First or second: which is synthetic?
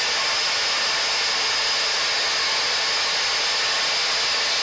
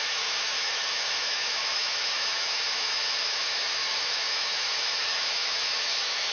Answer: second